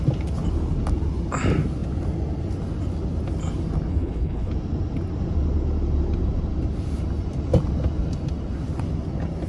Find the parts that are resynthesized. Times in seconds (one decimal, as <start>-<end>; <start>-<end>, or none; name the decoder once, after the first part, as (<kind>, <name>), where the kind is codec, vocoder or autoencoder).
3.9-4.5 (codec, HILCodec)